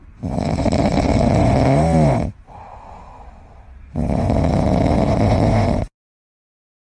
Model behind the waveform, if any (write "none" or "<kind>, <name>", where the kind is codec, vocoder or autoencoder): none